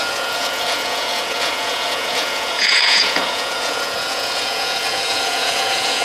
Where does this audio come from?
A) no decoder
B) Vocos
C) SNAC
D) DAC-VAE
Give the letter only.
B